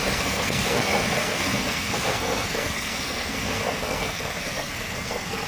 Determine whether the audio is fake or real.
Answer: fake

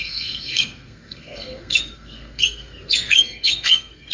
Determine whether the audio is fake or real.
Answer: fake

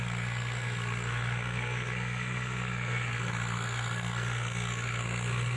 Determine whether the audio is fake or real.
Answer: fake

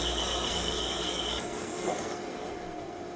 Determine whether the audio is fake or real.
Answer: fake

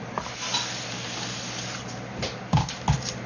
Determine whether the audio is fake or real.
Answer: real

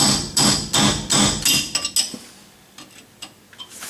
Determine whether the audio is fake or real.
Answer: real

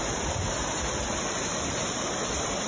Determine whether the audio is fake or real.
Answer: real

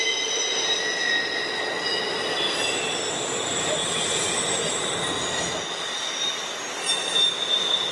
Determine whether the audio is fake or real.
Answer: real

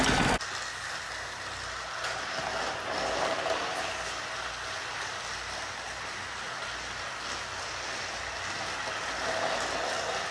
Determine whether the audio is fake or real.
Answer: real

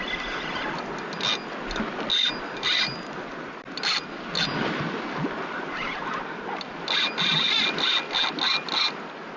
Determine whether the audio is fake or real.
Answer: real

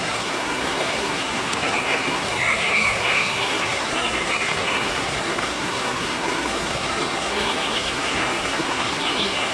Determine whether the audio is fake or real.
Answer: fake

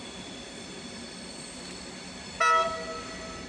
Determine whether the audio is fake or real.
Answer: real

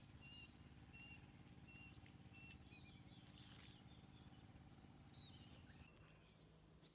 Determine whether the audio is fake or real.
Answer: real